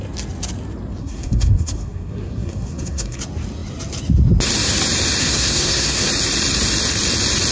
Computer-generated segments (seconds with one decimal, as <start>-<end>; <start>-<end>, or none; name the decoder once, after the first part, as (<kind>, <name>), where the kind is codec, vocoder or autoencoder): 1.0-3.2 (codec, SNAC); 5.2-6.1